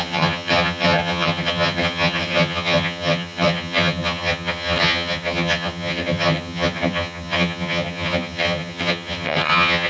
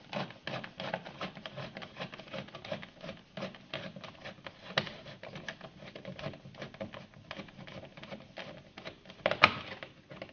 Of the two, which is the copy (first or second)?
first